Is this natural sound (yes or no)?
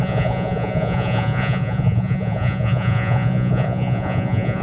no